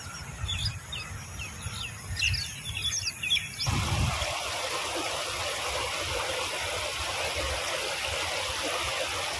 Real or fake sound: real